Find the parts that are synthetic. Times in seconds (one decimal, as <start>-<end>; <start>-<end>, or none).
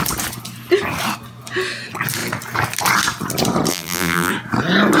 3.7-4.3